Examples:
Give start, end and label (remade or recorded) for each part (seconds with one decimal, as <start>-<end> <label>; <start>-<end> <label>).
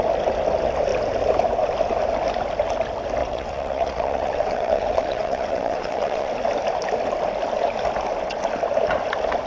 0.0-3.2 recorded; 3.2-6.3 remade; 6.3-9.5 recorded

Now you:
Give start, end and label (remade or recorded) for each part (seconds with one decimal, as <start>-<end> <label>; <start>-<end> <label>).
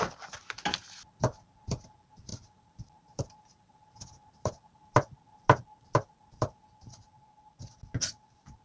0.0-8.6 recorded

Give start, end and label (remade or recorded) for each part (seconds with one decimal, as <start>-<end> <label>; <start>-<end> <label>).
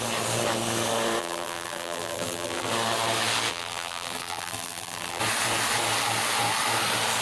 0.0-1.2 recorded; 1.2-2.7 remade; 2.7-3.5 recorded; 3.5-5.2 remade; 5.2-7.2 recorded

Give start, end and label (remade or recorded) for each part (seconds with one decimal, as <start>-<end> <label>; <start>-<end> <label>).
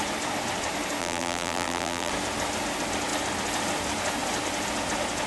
0.0-1.0 recorded; 1.0-2.1 remade; 2.1-5.3 recorded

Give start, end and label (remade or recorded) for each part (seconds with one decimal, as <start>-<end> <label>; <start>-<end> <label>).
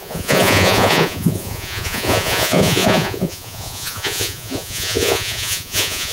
0.0-6.1 remade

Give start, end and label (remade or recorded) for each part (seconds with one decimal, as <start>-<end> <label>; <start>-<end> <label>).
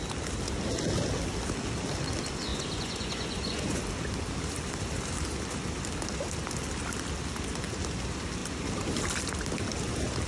0.0-2.5 recorded; 2.5-3.8 remade; 3.8-10.3 recorded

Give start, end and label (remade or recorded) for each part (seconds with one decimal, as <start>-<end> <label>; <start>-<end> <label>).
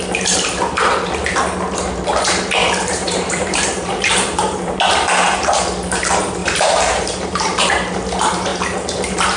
0.0-2.6 recorded; 2.6-4.8 remade; 4.8-6.4 recorded; 6.4-7.6 remade; 7.6-9.4 recorded